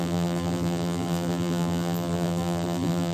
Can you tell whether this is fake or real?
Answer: fake